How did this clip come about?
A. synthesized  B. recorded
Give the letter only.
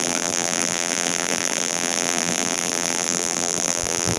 A